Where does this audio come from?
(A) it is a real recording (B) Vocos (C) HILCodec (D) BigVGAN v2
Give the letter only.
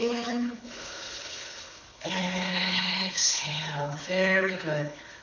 C